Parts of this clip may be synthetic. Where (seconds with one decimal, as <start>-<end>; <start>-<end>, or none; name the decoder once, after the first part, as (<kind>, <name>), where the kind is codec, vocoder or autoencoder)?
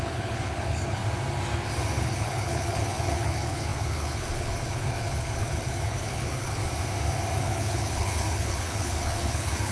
0.0-1.0 (codec, HILCodec); 2.0-6.6; 7.4-9.7